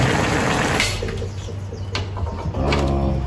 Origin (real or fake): real